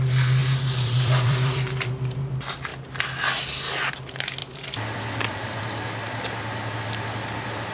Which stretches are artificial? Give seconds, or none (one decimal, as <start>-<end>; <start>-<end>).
0.4-2.3; 4.4-5.4